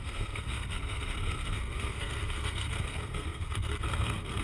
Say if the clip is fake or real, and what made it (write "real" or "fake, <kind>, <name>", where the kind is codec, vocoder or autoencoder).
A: fake, codec, SNAC